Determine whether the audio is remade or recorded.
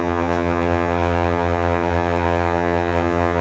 remade